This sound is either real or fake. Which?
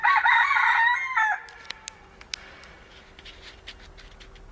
real